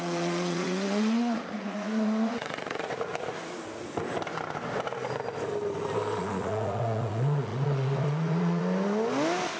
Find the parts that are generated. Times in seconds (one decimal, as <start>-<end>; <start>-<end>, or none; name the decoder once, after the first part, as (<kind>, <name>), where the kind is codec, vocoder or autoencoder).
0.0-3.1 (vocoder, Vocos); 6.2-8.6